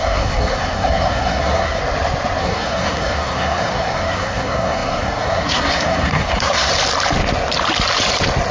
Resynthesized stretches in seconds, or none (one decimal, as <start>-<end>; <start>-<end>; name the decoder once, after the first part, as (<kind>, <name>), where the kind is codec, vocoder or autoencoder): 0.0-1.8 (codec, SNAC); 2.4-6.7